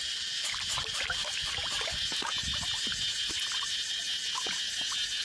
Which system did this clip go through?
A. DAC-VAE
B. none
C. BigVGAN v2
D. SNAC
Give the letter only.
B